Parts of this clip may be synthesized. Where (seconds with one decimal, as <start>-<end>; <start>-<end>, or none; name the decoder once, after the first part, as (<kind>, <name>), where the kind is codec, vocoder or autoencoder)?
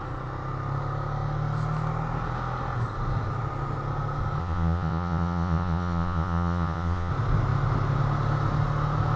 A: 4.4-7.1 (vocoder, Vocos)